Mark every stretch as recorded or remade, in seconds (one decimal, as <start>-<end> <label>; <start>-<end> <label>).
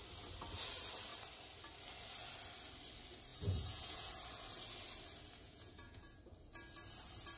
0.0-3.3 recorded; 3.3-4.1 remade; 4.1-5.4 recorded; 5.4-6.2 remade; 6.2-7.4 recorded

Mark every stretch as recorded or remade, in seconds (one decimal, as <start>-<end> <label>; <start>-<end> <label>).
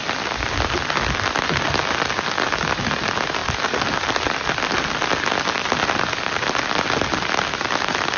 0.0-8.2 recorded